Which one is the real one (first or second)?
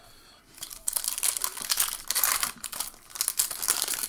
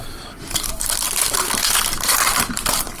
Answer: first